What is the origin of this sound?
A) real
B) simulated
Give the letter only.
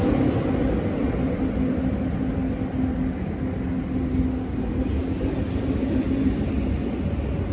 A